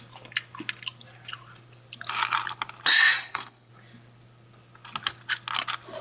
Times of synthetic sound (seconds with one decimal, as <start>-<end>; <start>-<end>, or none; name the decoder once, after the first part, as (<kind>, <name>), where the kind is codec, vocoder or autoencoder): 3.2-3.7 (codec, SNAC)